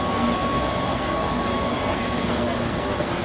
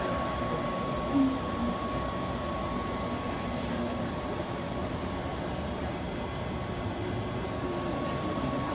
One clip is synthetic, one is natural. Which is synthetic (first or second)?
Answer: first